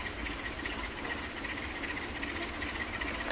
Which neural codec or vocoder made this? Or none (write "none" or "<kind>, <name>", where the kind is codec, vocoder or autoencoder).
none